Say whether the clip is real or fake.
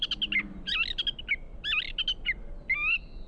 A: real